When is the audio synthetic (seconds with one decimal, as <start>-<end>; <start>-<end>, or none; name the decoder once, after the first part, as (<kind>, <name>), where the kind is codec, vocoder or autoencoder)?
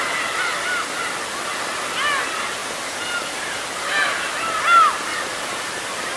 none